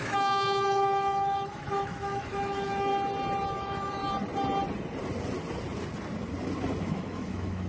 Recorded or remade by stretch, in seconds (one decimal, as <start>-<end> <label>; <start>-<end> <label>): 0.0-2.9 remade; 2.9-3.5 recorded; 3.5-4.0 remade; 4.0-6.8 recorded; 6.8-7.7 remade